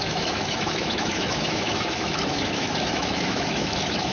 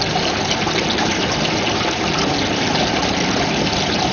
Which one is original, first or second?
second